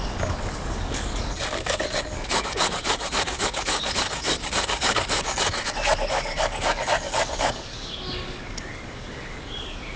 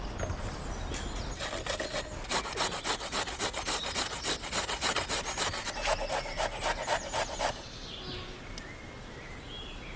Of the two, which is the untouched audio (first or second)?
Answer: second